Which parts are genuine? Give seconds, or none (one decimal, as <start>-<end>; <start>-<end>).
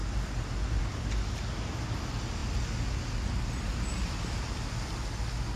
0.0-5.6